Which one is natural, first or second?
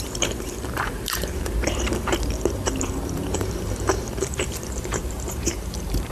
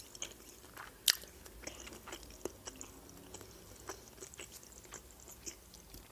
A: second